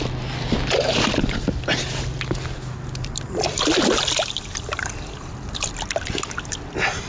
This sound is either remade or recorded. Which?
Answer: recorded